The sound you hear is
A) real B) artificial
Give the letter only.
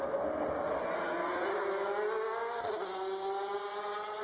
A